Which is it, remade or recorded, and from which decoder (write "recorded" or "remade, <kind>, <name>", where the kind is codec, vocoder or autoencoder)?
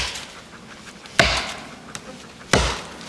recorded